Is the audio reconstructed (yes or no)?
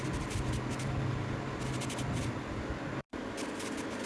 no